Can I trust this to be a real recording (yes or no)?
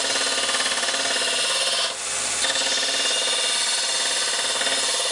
yes